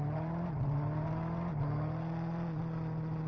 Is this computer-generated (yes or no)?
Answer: no